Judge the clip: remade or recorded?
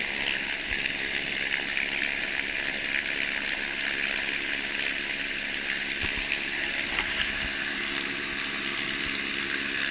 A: recorded